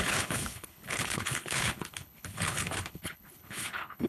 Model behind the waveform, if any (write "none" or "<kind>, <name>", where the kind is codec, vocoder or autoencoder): codec, HILCodec